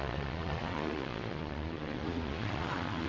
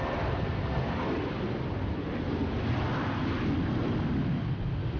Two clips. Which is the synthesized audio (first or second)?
first